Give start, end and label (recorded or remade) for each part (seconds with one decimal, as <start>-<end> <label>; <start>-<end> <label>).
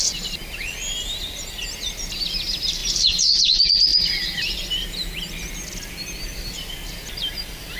0.0-7.8 recorded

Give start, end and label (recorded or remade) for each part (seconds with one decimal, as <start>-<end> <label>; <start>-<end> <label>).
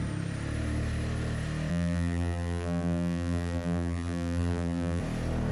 0.0-1.7 recorded; 1.7-5.0 remade; 5.0-5.5 recorded